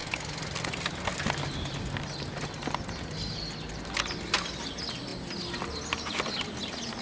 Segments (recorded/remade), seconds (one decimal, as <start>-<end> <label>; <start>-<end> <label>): 0.0-7.0 recorded